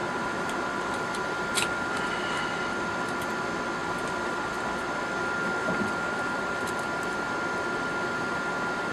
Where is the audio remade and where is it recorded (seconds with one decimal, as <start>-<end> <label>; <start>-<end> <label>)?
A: 0.0-2.4 remade; 2.4-3.8 recorded; 3.8-4.8 remade; 4.8-5.6 recorded; 5.6-6.7 remade; 6.7-8.9 recorded